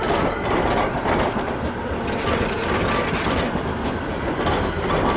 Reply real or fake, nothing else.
real